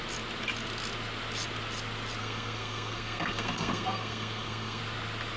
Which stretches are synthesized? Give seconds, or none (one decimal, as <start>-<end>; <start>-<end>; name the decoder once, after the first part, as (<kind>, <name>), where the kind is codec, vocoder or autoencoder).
2.2-4.8 (codec, SNAC)